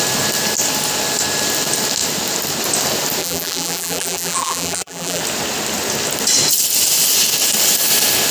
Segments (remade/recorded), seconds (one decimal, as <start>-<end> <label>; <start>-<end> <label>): 0.0-3.2 recorded; 3.2-5.2 remade; 5.2-8.3 recorded